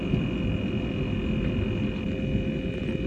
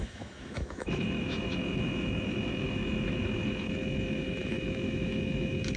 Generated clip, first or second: second